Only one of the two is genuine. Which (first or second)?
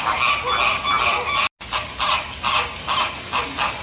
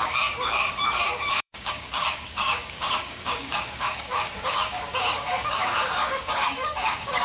first